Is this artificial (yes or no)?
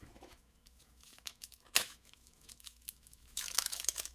yes